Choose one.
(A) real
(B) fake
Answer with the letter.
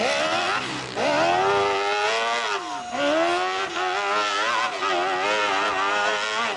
A